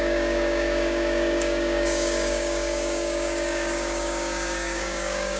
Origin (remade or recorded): remade